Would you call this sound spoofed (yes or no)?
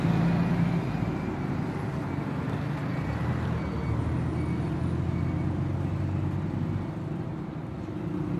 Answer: no